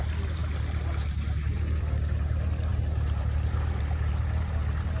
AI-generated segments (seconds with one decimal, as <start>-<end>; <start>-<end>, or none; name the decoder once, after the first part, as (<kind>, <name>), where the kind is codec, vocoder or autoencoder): none